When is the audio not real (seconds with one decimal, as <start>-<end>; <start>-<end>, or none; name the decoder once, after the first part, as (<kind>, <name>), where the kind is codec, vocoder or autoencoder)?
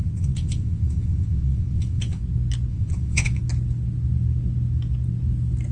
0.0-2.2 (vocoder, WaveNeXt); 2.7-3.4